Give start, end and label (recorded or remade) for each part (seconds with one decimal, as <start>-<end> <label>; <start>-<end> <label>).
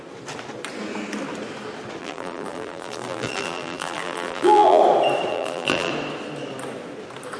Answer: 0.0-2.0 recorded; 2.0-4.8 remade; 4.8-5.3 recorded; 5.3-5.9 remade; 5.9-7.4 recorded